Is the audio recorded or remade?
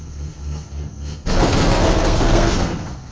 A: remade